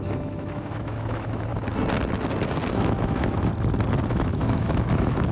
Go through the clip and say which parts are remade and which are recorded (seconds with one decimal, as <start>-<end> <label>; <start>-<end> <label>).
0.0-1.5 remade; 1.5-2.7 recorded; 2.7-3.5 remade; 3.5-4.1 recorded; 4.1-5.3 remade